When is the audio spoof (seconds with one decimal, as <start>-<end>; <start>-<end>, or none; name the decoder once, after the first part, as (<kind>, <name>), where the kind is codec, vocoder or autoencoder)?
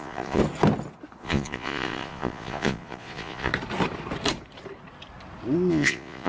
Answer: 0.0-0.4 (vocoder, Vocos); 1.2-3.5; 5.7-6.3